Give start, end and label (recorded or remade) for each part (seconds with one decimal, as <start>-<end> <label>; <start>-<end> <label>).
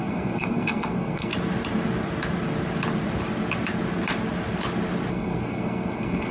0.0-1.3 remade; 1.3-5.1 recorded; 5.1-6.3 remade